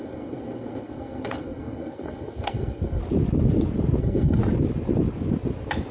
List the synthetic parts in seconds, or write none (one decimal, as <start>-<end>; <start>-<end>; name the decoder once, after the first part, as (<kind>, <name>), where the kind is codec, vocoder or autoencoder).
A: 0.0-3.0 (codec, SNAC); 4.0-4.4